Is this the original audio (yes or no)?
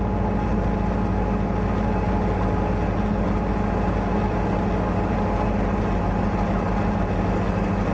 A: yes